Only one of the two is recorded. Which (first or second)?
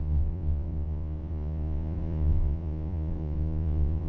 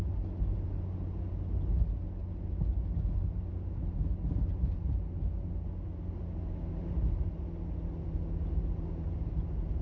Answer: second